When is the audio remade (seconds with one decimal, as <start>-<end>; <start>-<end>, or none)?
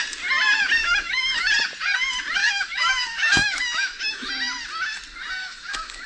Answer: 0.8-1.5; 2.4-4.3; 5.4-6.1